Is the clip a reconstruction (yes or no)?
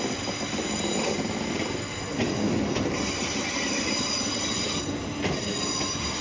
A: no